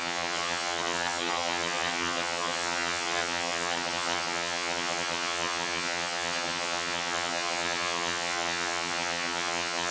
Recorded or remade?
remade